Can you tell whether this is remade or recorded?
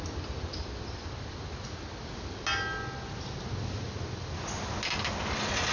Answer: recorded